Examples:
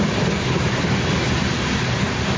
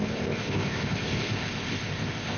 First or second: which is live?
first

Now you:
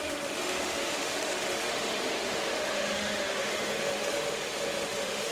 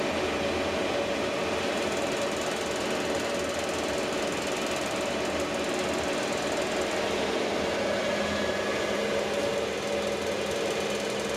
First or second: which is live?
second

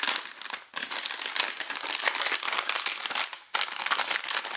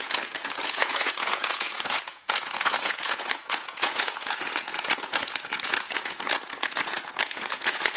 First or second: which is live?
first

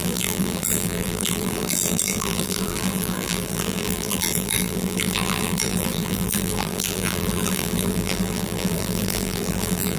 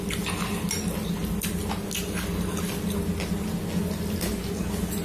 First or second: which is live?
second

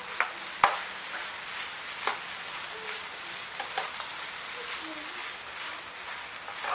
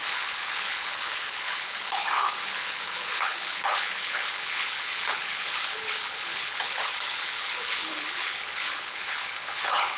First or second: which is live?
first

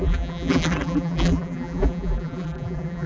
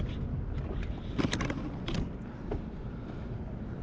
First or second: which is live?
second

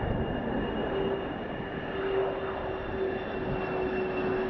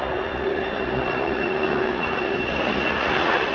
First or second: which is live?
first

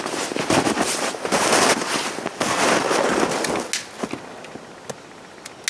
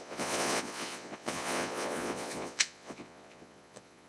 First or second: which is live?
first